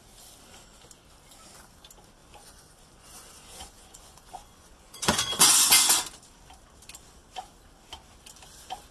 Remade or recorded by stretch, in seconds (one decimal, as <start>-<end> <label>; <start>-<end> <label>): 0.0-2.2 recorded; 2.2-6.0 remade; 6.0-8.9 recorded